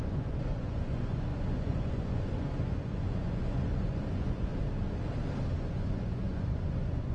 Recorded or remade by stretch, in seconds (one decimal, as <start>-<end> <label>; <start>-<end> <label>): 0.0-4.5 remade; 4.5-5.6 recorded; 5.6-7.1 remade